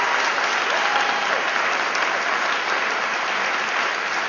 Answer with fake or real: real